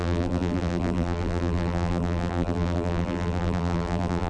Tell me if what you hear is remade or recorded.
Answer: remade